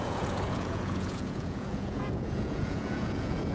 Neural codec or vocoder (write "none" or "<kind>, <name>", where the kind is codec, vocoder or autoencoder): vocoder, Vocos